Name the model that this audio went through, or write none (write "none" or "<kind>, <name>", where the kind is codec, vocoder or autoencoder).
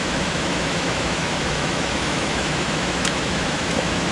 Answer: autoencoder, DAC-VAE